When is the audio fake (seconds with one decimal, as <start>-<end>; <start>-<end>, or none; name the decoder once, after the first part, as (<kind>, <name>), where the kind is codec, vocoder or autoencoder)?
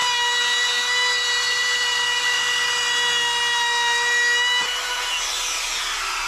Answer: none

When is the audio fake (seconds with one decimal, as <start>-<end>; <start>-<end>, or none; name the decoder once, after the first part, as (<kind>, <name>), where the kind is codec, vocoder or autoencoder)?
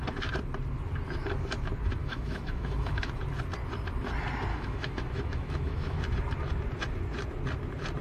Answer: 2.0-3.1 (autoencoder, DAC-VAE); 4.5-6.0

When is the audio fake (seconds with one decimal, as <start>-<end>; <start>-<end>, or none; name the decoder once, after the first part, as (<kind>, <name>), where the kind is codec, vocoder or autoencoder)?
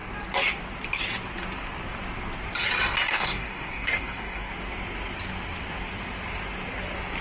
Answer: 3.1-4.5 (codec, DAC)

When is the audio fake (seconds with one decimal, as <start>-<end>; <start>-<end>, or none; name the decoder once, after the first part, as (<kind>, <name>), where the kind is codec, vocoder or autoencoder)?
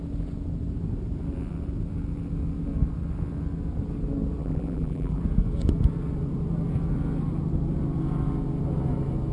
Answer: 4.4-5.2 (vocoder, BigVGAN v2)